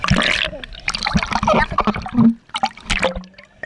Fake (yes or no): no